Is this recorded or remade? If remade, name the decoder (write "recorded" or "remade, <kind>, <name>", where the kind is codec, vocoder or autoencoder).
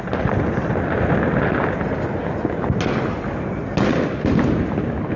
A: recorded